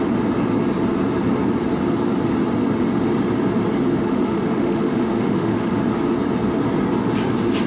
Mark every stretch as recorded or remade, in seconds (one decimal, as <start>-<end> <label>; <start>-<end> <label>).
0.0-4.1 recorded; 4.1-5.8 remade; 5.8-7.7 recorded